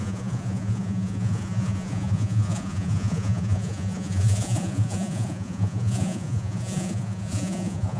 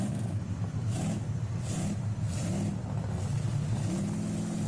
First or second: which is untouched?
second